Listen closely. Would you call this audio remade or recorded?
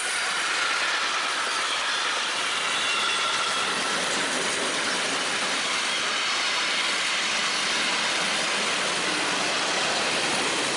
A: remade